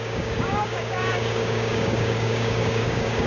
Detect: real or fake fake